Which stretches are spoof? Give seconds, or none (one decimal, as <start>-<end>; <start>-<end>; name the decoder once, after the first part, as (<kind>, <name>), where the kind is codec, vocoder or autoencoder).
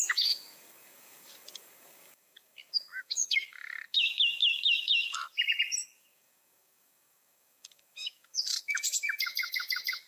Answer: 0.0-10.1 (codec, DAC)